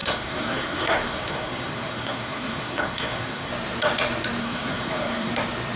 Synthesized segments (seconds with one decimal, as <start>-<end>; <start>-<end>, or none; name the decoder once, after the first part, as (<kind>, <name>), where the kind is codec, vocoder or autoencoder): 0.0-3.5 (codec, SNAC); 4.4-5.3